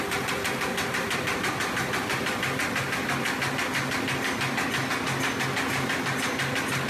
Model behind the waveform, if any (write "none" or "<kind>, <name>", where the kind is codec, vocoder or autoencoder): none